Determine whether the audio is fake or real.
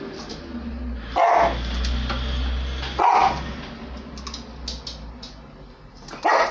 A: real